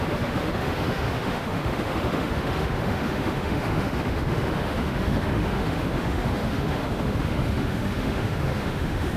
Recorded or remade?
remade